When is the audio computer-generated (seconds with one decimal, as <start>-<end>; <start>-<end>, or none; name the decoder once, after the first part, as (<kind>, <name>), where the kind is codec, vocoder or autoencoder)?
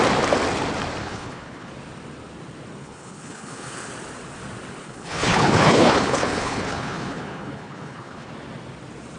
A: 1.0-1.7 (codec, HILCodec); 2.8-3.9; 4.8-8.3